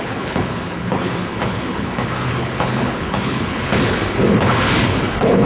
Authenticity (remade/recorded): remade